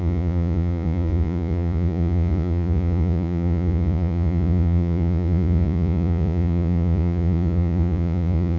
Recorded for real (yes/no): no